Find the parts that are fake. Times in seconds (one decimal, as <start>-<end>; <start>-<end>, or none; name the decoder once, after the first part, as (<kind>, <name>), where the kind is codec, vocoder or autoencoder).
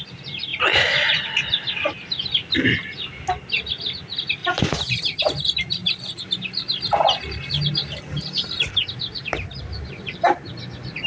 4.4-5.2 (vocoder, BigVGAN v2); 5.8-10.6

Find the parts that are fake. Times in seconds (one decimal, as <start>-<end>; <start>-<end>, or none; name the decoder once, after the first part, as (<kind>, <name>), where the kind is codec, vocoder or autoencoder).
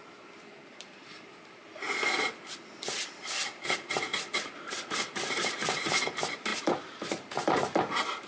0.0-1.6 (vocoder, BigVGAN v2); 3.0-4.1; 4.9-8.3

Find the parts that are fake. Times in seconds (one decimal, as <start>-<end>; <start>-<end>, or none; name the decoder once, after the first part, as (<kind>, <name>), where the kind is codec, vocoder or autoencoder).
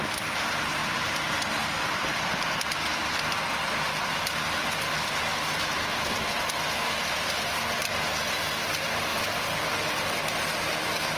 0.8-2.6 (vocoder, BigVGAN v2); 9.1-10.1